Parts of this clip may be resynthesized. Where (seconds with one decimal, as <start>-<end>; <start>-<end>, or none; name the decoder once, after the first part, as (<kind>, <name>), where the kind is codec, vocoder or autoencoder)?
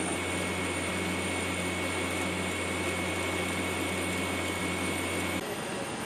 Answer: none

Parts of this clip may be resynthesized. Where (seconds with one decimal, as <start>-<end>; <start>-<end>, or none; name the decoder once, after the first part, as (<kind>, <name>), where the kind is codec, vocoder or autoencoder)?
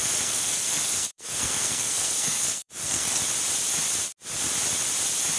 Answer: 0.0-3.2 (codec, SNAC)